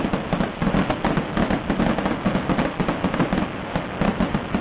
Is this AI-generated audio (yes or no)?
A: no